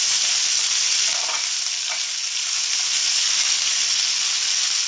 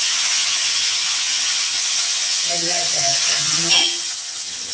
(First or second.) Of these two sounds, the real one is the first